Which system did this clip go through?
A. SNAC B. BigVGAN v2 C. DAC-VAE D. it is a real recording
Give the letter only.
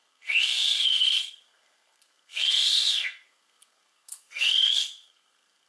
A